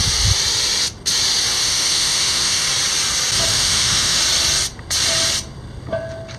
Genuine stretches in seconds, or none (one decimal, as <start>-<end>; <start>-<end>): 0.0-1.6; 2.7-3.5; 4.2-6.4